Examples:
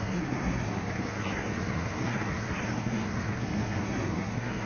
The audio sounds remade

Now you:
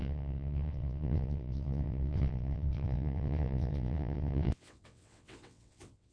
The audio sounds remade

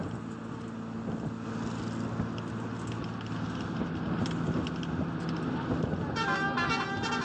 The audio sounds recorded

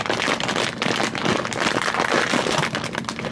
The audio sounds remade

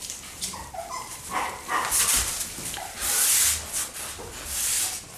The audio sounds remade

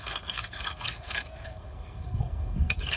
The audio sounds remade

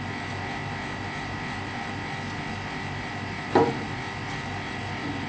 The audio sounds recorded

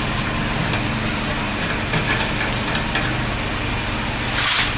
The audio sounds recorded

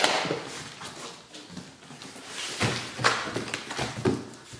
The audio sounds recorded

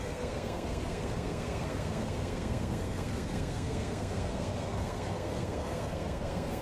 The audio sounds remade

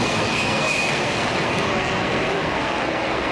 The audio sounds remade